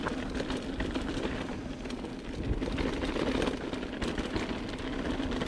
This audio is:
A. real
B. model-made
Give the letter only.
A